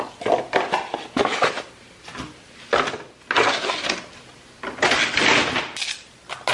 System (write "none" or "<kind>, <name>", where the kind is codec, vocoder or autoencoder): none